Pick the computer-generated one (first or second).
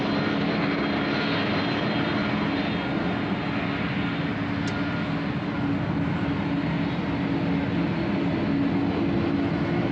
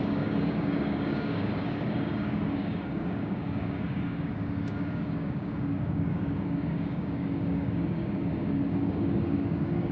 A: second